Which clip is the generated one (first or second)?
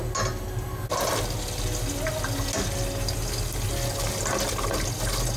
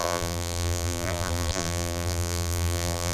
second